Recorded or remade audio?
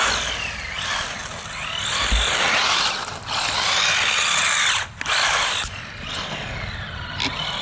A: recorded